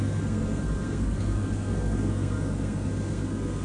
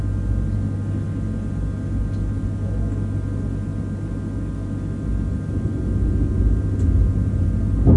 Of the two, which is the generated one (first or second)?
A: first